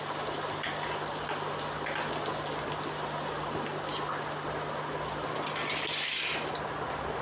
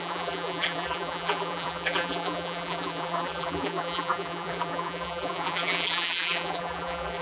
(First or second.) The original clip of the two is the first